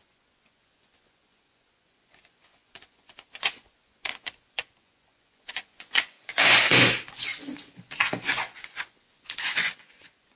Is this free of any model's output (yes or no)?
no